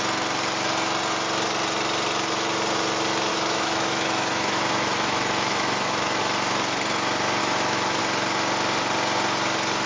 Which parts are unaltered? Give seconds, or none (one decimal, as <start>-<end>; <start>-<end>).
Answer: 0.0-3.3; 6.2-7.4; 8.0-9.9